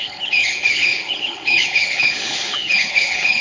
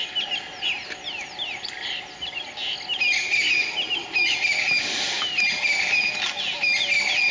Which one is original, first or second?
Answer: second